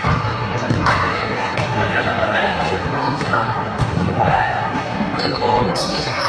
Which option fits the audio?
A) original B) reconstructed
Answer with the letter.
B